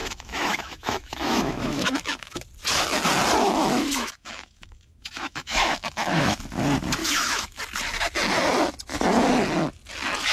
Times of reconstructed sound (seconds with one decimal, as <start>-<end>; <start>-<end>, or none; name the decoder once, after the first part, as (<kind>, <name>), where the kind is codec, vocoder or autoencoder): 0.0-2.4 (autoencoder, DAC-VAE); 3.6-6.4; 7.0-7.6